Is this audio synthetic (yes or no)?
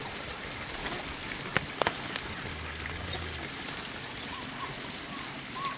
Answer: no